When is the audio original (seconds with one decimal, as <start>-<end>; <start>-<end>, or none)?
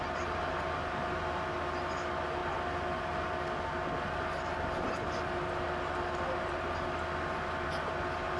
0.0-8.4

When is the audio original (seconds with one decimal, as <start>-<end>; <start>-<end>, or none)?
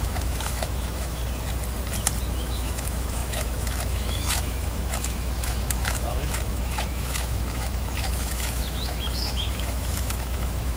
1.2-2.3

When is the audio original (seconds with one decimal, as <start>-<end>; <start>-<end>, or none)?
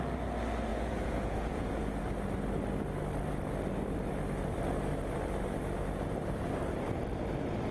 0.0-0.7; 2.0-7.7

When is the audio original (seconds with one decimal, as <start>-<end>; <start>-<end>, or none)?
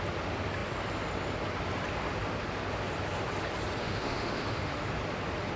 0.0-3.8; 4.8-5.6